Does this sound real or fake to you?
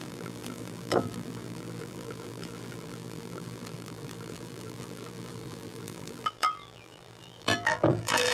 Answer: fake